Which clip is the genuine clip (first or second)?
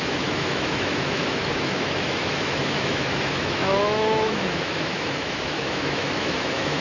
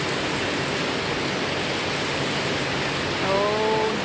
second